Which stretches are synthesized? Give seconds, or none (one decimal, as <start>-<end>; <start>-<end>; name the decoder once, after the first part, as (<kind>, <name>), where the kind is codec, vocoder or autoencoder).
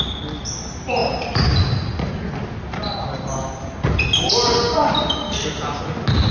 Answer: none